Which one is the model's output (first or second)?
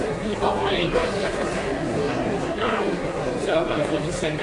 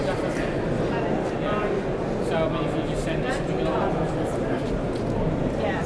first